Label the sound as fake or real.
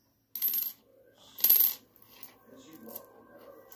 real